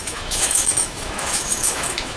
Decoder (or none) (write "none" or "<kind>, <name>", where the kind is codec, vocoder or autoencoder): autoencoder, DAC-VAE